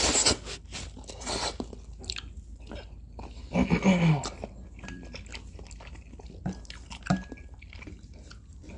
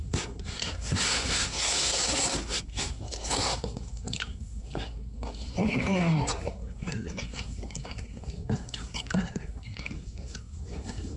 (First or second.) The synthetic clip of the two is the second